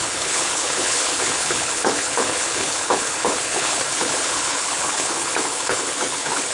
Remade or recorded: remade